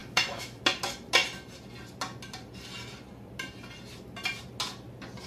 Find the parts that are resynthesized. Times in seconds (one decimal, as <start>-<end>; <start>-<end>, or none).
0.0-0.6